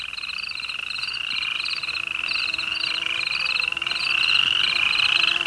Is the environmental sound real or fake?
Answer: real